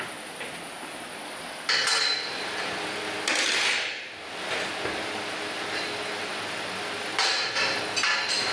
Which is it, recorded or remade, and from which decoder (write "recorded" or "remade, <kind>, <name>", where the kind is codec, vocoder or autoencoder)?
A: recorded